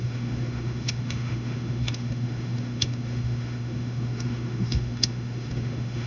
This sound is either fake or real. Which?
fake